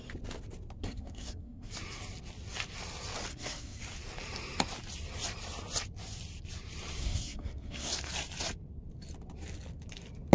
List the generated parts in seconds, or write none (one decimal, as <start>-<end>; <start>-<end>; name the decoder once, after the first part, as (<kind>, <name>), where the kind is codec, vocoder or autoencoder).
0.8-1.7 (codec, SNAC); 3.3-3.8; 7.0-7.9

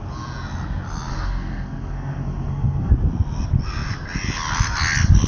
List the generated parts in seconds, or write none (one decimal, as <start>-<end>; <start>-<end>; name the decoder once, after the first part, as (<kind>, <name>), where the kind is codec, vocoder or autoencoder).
1.1-2.9 (codec, SNAC)

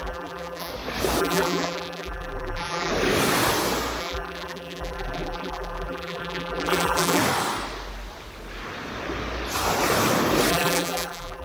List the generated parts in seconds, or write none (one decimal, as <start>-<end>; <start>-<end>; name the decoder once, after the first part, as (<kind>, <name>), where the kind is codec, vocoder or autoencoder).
0.0-0.7 (vocoder, BigVGAN v2); 1.2-2.9; 4.0-7.2; 10.5-11.4

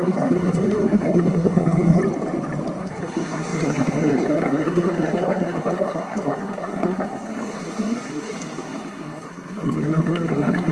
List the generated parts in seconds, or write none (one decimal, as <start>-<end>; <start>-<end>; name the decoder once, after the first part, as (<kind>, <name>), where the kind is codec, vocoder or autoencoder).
0.0-2.0 (codec, SNAC); 2.8-10.7

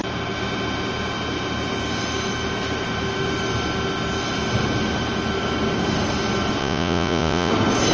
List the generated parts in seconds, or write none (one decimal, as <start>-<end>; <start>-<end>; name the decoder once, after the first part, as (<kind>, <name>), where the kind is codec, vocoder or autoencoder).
6.6-7.5 (vocoder, Vocos)